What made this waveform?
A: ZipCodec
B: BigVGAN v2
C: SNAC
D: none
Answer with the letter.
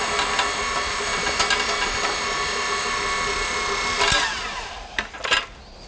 D